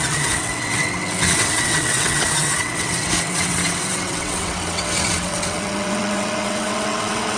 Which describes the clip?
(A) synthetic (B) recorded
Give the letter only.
A